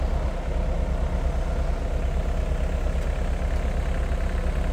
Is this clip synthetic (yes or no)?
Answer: no